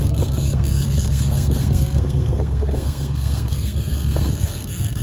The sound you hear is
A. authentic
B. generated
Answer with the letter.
B